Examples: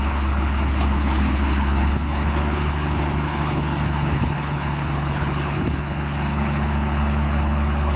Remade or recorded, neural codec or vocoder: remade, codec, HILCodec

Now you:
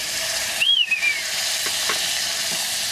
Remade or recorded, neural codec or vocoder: recorded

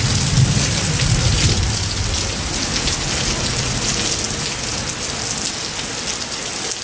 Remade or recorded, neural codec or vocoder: recorded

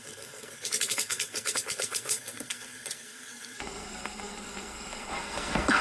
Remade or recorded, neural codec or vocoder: remade, codec, SNAC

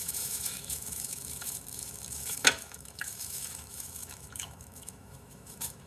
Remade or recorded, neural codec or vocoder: remade, autoencoder, DAC-VAE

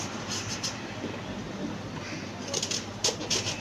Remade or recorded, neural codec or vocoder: recorded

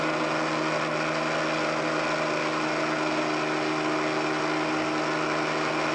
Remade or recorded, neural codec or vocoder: recorded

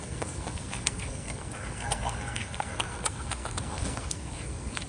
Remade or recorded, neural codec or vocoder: remade, codec, SNAC